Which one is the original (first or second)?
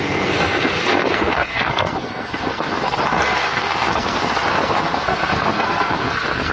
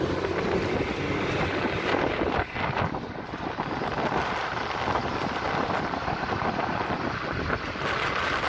second